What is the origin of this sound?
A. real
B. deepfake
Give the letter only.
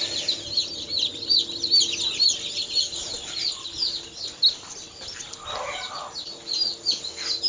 A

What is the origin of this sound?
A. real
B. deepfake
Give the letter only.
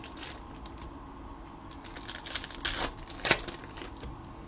A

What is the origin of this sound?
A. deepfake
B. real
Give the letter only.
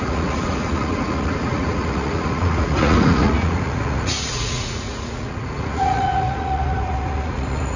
A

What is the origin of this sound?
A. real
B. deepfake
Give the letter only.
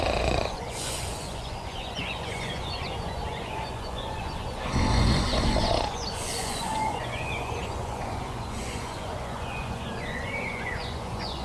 B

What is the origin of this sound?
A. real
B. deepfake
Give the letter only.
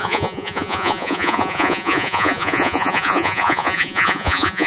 B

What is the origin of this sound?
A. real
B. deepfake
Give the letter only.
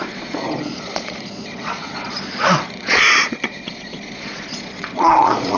B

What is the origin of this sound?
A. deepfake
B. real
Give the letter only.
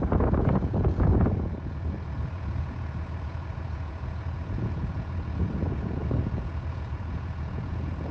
A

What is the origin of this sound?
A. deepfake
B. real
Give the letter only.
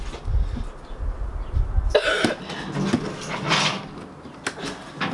B